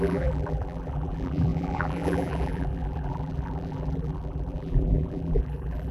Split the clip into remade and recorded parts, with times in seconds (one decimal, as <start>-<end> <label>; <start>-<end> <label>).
0.0-5.9 remade